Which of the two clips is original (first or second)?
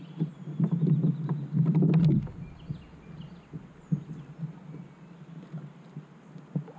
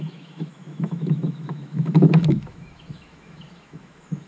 first